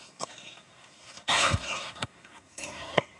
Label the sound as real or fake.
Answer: fake